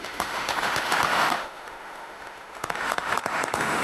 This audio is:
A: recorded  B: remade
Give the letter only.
B